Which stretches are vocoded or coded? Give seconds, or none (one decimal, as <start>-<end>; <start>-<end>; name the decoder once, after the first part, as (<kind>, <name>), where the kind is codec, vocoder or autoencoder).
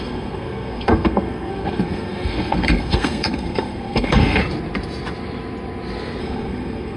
0.0-4.4 (codec, SNAC); 6.2-7.0